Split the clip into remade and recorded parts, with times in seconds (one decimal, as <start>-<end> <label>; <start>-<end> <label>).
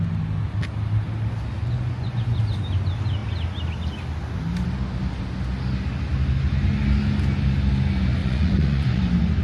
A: 0.0-1.6 recorded; 1.6-2.4 remade; 2.4-8.2 recorded; 8.2-9.0 remade; 9.0-9.4 recorded